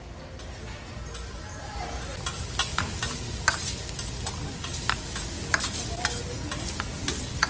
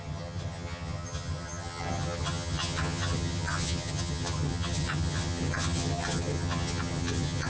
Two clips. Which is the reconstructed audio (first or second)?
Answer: second